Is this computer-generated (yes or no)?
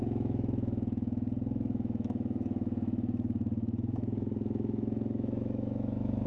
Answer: yes